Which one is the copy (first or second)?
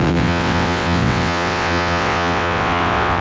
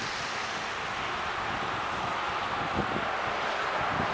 first